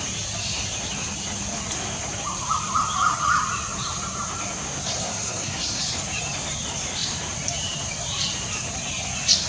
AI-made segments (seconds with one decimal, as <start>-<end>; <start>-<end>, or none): 5.0-5.8